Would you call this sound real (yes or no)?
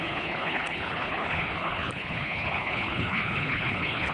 no